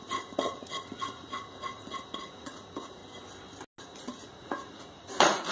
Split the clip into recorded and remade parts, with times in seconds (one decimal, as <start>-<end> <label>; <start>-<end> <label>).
0.0-3.0 remade; 3.0-3.8 recorded; 3.8-5.5 remade